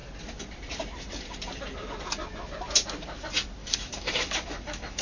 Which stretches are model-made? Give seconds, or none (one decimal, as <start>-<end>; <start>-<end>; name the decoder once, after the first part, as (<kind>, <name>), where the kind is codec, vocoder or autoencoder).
3.6-5.0 (autoencoder, DAC-VAE)